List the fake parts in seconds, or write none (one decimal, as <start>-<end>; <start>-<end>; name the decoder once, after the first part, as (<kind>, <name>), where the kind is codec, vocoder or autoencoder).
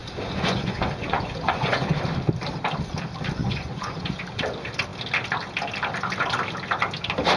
0.0-1.9 (vocoder, Vocos); 3.4-4.2